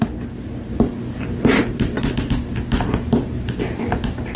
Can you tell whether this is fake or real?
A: real